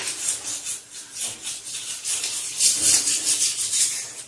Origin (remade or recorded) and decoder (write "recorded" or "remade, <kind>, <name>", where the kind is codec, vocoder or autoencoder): recorded